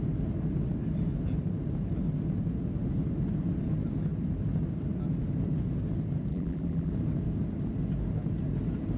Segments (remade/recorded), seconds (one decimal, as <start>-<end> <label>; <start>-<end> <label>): 0.0-6.3 recorded; 6.3-6.9 remade; 6.9-9.0 recorded